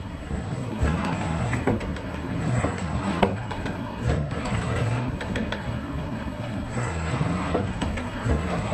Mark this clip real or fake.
fake